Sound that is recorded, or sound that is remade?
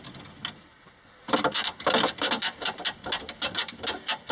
recorded